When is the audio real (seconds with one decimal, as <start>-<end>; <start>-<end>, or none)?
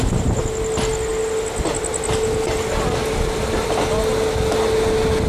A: 0.0-5.3